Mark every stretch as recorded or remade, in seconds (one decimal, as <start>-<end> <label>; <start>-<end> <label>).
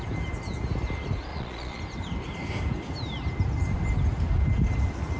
0.0-1.3 recorded; 1.3-1.8 remade; 1.8-5.2 recorded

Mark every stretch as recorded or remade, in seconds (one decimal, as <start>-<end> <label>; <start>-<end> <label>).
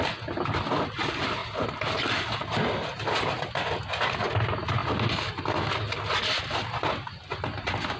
0.0-8.0 recorded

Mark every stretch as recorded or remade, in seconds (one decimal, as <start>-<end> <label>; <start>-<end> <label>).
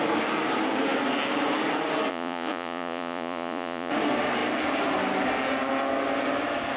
0.0-2.1 recorded; 2.1-3.9 remade; 3.9-6.8 recorded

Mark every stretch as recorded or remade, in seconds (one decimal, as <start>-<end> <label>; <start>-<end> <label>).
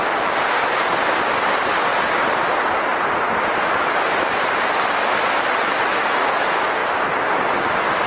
0.0-8.1 recorded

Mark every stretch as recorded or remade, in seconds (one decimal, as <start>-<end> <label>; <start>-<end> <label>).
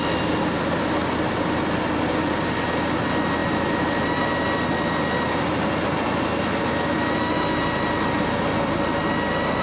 0.0-9.6 recorded